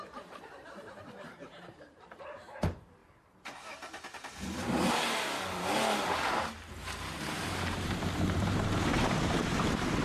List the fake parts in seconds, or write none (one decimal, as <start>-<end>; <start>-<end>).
0.0-3.0; 4.9-10.0

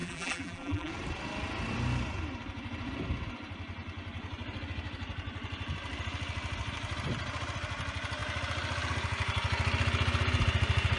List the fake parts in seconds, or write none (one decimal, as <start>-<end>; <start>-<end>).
0.0-0.9